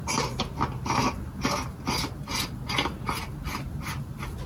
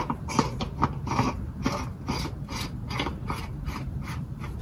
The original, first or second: first